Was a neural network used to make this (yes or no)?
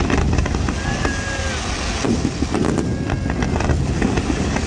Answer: no